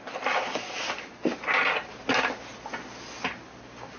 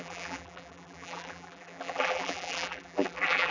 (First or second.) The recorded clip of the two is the first